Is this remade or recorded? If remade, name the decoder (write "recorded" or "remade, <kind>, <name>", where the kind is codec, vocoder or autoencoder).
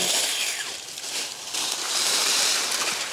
remade, vocoder, BigVGAN v2